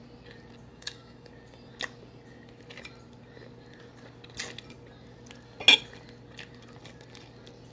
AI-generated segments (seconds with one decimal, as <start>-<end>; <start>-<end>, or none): 0.7-1.3